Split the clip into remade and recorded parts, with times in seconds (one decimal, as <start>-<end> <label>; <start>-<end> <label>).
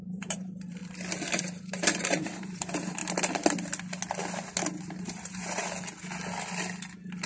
0.0-0.8 remade; 0.8-1.4 recorded; 1.4-3.0 remade; 3.0-4.8 recorded; 4.8-5.6 remade; 5.6-7.3 recorded